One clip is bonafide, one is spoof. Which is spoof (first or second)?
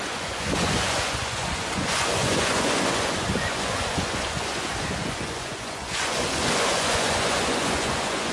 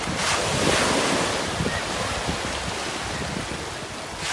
first